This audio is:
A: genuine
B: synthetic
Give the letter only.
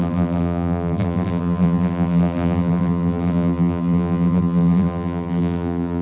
B